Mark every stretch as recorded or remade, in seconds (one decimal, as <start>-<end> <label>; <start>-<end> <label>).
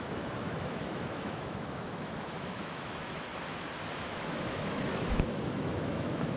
0.0-3.3 remade; 3.3-4.1 recorded; 4.1-6.4 remade